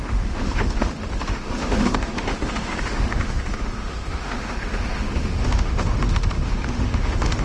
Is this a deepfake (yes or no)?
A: yes